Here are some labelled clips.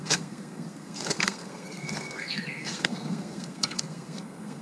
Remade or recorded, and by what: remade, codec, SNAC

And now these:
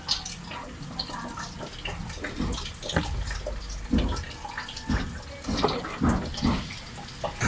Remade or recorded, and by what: recorded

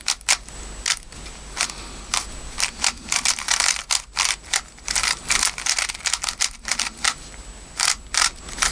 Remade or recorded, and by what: recorded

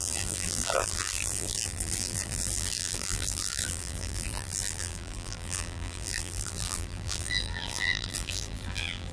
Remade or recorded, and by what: remade, vocoder, BigVGAN v2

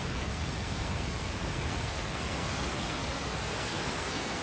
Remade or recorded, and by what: remade, codec, SNAC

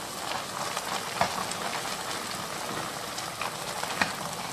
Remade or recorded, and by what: recorded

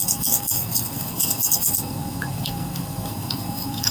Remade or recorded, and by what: remade, codec, SNAC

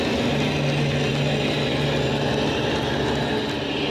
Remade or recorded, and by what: recorded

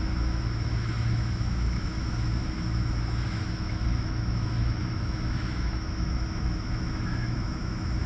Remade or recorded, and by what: remade, autoencoder, DAC-VAE